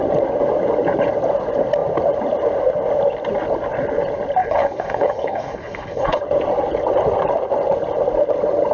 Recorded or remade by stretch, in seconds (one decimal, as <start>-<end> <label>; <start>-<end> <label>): 0.0-4.4 recorded; 4.4-6.2 remade; 6.2-8.7 recorded